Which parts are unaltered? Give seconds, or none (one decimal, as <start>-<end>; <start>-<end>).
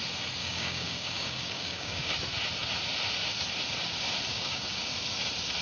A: 0.0-0.4; 2.1-4.3; 4.9-5.6